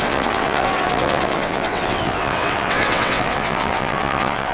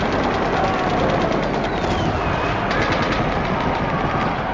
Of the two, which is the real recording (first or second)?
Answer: second